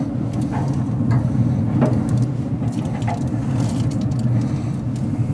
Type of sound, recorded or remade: recorded